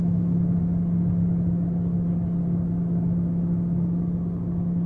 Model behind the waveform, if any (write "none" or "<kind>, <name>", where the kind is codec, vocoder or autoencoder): none